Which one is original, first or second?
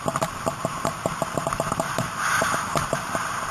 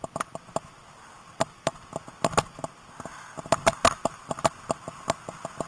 second